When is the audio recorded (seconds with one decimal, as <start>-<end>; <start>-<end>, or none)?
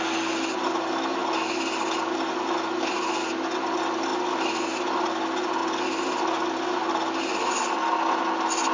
0.0-8.7